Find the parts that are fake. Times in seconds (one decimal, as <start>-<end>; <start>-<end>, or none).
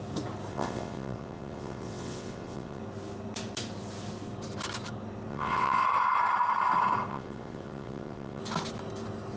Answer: 0.5-2.8; 5.3-5.8; 7.1-8.4